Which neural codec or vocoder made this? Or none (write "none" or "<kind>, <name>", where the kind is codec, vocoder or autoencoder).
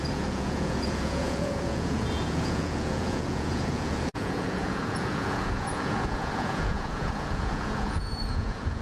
vocoder, Vocos